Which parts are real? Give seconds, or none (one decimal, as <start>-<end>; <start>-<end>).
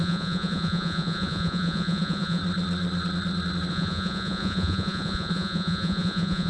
2.4-3.7